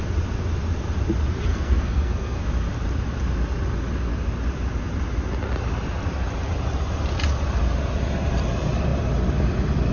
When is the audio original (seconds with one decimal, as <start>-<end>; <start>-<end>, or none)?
0.0-1.5; 2.4-9.9